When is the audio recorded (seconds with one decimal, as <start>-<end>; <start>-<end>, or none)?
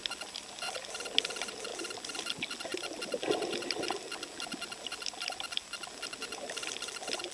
0.0-7.3